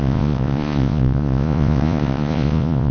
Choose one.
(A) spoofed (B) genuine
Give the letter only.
A